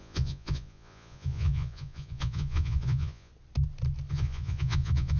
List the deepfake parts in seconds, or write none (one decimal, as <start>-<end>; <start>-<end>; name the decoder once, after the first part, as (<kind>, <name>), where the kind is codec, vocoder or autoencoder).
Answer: 0.0-3.3 (vocoder, Vocos); 4.1-5.2